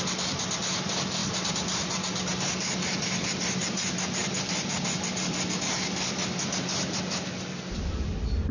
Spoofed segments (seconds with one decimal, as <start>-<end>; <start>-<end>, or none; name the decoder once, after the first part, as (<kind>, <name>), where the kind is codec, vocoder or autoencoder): 1.2-1.9 (vocoder, BigVGAN v2)